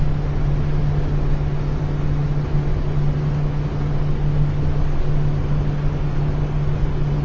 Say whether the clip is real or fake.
real